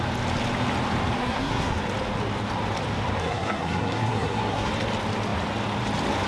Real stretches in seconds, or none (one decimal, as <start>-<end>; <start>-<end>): 0.0-1.2; 1.7-3.2; 4.7-6.3